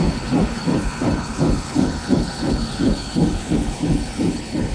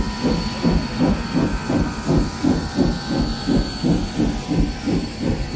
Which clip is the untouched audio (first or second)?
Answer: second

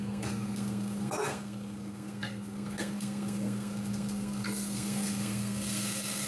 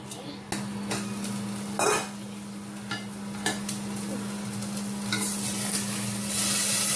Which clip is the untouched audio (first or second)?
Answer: second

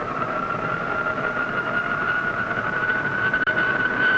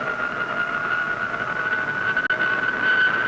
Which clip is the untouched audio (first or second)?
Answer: second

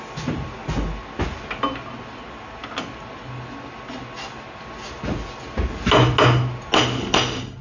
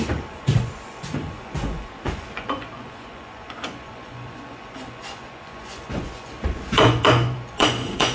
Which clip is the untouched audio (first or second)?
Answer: first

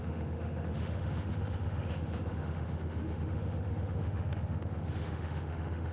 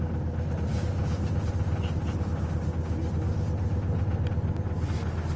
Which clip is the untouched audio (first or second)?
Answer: second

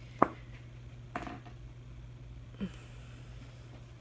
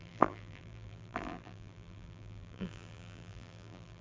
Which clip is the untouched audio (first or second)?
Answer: first